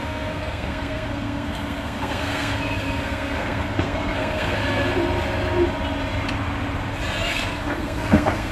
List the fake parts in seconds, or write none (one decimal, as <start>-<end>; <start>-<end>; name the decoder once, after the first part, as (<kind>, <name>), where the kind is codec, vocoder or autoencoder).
0.0-4.6 (codec, SNAC); 7.3-8.5